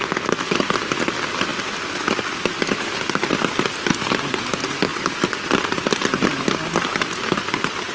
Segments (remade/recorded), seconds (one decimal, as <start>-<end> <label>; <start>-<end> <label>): 0.0-7.9 recorded